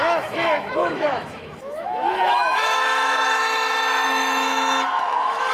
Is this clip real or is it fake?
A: fake